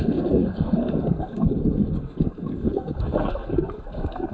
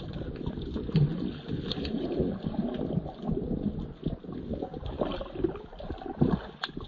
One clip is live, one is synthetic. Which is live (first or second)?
second